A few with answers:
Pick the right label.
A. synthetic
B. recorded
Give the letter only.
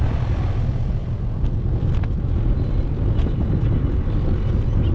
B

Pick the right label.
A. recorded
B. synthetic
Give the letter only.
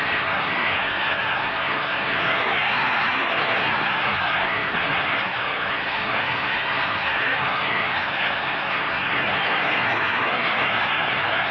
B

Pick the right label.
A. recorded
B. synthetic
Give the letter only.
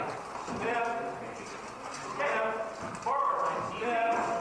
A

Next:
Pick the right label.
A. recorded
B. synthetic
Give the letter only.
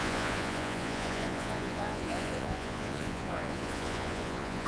B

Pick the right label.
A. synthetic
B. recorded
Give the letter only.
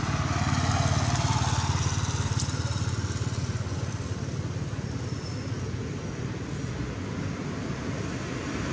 B